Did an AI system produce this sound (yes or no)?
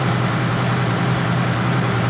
yes